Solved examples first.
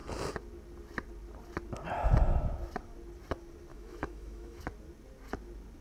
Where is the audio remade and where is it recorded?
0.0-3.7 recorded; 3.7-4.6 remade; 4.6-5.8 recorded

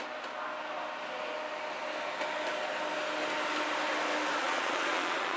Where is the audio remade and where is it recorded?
0.0-4.4 recorded; 4.4-5.4 remade

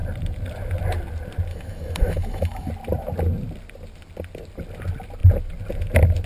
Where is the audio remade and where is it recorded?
0.0-1.5 recorded; 1.5-2.7 remade; 2.7-6.3 recorded

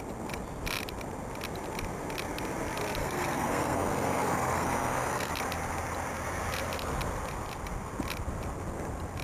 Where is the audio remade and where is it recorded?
0.0-3.0 recorded; 3.0-5.3 remade; 5.3-9.2 recorded

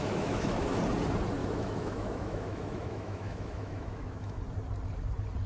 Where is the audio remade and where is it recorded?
0.0-0.8 remade; 0.8-1.4 recorded; 1.4-4.4 remade; 4.4-5.5 recorded

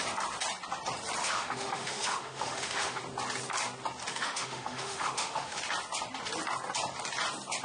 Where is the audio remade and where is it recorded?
0.0-1.2 recorded; 1.2-3.0 remade; 3.0-4.1 recorded; 4.1-5.6 remade; 5.6-7.6 recorded